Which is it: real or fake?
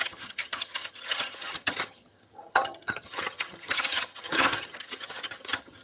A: fake